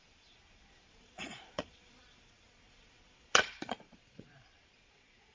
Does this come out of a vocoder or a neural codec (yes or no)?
yes